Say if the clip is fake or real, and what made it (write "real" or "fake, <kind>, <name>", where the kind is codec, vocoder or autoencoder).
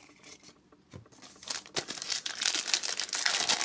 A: real